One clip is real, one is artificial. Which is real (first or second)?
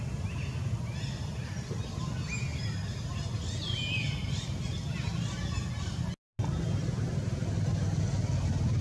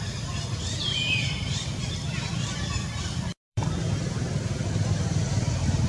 first